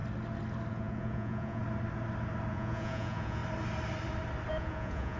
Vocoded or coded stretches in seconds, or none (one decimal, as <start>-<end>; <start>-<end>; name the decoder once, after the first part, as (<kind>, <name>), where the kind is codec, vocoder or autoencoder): 0.7-1.6 (vocoder, Vocos); 2.5-3.4; 4.5-5.2